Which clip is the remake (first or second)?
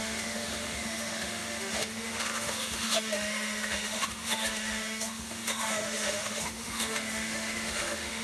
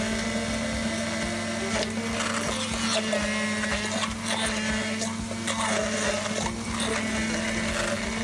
first